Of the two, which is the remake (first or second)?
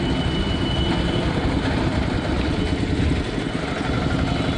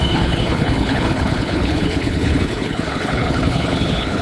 second